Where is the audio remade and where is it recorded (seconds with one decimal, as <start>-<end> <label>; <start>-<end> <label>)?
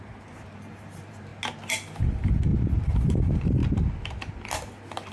0.0-1.3 remade; 1.3-2.0 recorded; 2.0-2.5 remade; 2.5-3.1 recorded; 3.1-3.6 remade; 3.6-5.1 recorded